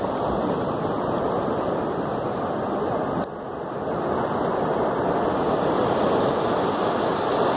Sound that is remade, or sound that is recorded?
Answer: recorded